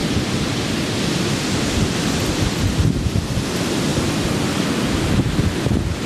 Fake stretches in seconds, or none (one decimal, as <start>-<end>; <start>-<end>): none